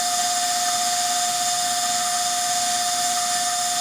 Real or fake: fake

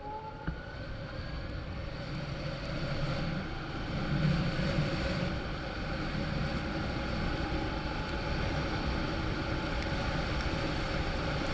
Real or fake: real